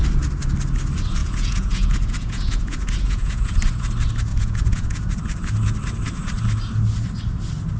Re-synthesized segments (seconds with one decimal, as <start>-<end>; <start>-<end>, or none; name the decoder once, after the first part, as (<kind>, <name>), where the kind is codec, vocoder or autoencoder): 1.2-3.5 (vocoder, Vocos); 4.3-5.1